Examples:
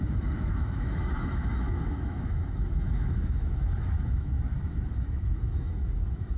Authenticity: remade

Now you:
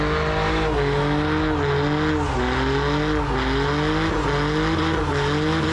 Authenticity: recorded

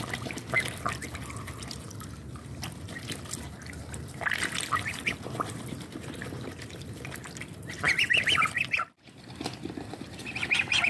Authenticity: recorded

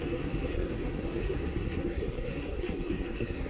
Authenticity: remade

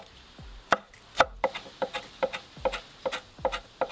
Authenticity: recorded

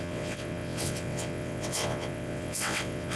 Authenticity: remade